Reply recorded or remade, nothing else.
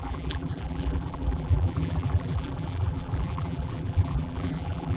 remade